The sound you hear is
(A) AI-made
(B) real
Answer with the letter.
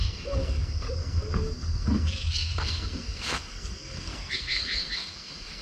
A